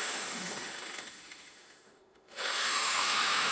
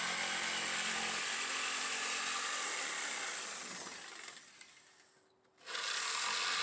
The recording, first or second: second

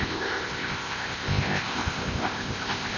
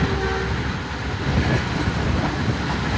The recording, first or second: second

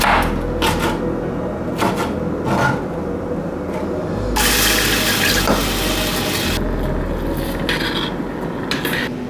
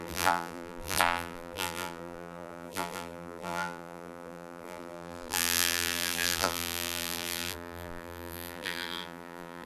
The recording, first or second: first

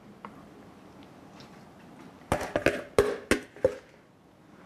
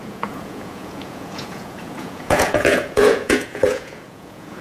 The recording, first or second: first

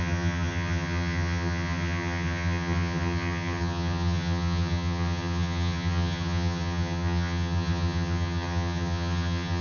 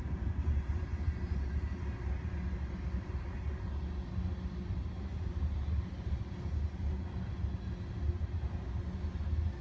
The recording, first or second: second